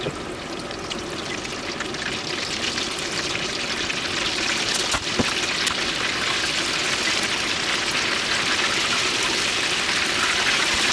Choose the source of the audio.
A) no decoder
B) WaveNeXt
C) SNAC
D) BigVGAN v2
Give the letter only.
A